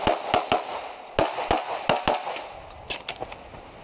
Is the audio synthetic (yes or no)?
no